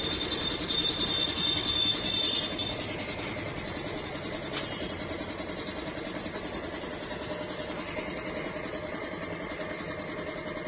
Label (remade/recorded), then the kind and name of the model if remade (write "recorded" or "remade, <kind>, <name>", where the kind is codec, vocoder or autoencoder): recorded